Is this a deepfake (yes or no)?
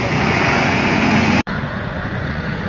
yes